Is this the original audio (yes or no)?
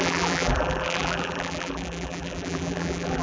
no